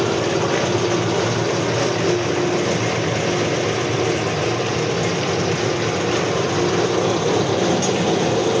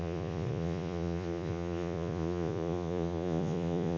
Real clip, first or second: first